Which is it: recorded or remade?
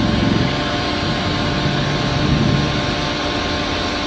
recorded